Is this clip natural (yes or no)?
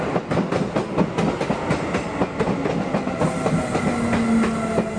yes